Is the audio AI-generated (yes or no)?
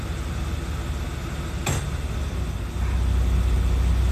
no